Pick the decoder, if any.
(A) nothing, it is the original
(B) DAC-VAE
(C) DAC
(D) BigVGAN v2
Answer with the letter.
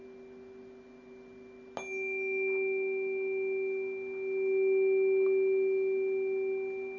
A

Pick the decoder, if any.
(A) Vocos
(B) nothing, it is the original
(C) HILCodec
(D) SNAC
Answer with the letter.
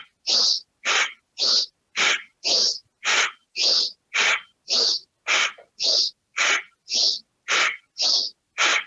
B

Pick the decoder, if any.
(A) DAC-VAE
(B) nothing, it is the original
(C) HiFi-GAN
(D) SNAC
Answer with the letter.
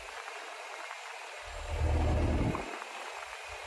B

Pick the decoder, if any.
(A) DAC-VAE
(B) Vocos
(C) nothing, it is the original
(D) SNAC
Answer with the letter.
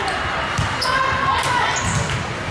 C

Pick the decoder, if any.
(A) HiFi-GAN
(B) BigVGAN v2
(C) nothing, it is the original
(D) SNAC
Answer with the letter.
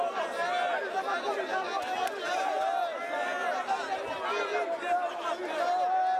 C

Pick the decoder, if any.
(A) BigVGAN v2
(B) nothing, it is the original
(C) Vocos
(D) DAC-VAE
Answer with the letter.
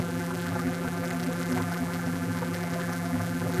A